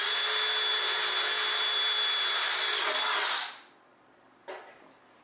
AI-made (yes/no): no